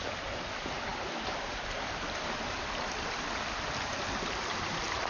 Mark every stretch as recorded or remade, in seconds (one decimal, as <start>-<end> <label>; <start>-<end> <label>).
0.0-5.1 recorded